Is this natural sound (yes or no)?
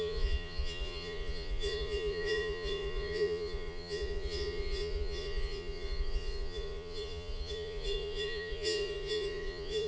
no